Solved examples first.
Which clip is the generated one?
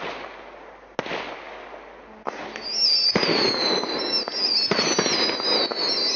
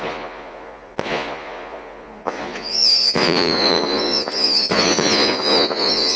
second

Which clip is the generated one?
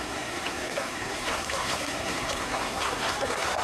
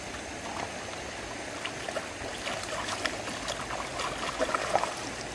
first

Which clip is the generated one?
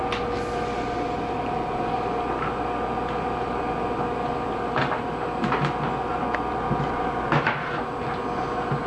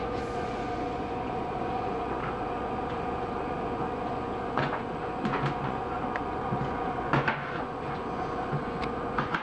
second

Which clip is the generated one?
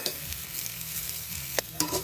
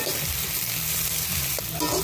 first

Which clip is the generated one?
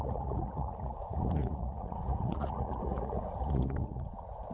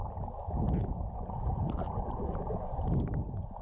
first